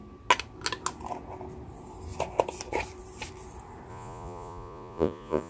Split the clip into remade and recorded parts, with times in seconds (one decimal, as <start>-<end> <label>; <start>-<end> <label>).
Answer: 0.0-3.9 recorded; 3.9-5.5 remade